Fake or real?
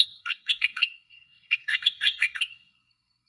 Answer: fake